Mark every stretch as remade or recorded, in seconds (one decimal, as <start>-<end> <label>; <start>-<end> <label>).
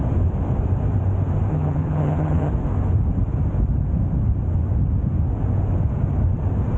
0.0-1.5 recorded; 1.5-2.5 remade; 2.5-6.8 recorded